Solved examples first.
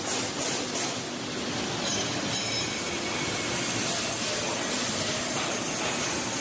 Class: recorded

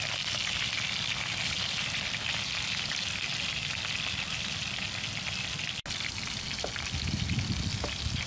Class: recorded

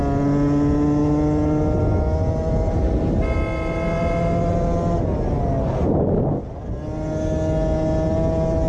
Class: recorded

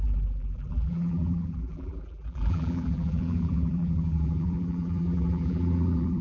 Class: remade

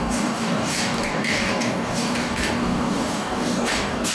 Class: remade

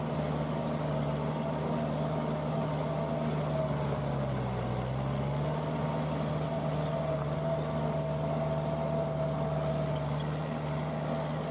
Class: recorded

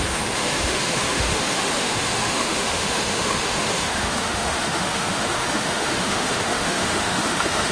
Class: remade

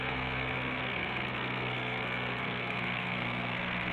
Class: remade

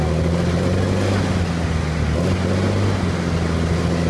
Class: recorded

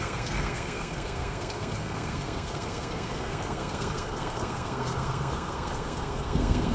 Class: remade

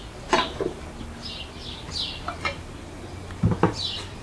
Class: recorded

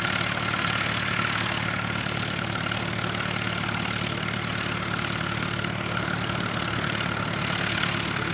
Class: recorded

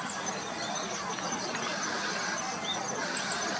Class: recorded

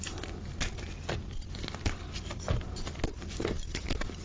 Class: recorded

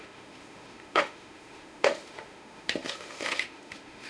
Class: remade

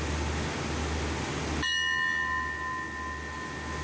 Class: recorded